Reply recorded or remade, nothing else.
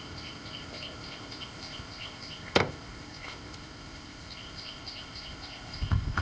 remade